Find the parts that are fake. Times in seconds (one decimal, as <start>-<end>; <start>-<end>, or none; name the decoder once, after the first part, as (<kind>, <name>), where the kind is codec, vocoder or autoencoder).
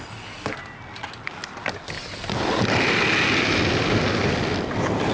none